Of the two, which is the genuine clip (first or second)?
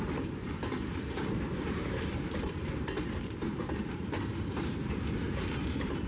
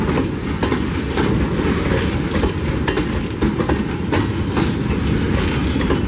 second